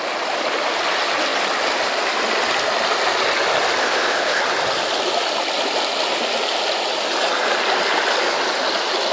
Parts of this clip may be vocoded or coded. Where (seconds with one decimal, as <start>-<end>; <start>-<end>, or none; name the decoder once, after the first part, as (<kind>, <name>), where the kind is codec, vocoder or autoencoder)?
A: 3.8-4.4 (codec, ZipCodec)